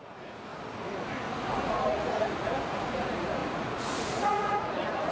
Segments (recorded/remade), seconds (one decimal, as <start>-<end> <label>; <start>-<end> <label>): 0.0-0.5 remade; 0.5-1.5 recorded; 1.5-5.1 remade